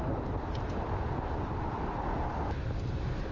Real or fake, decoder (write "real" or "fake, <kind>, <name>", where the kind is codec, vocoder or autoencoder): real